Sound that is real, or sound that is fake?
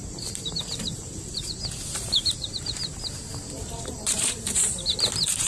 fake